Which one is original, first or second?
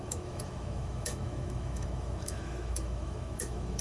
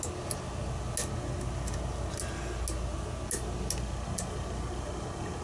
second